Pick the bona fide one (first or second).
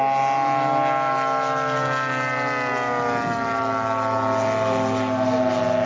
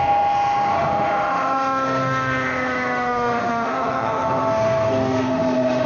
first